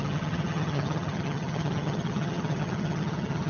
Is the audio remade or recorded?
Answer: remade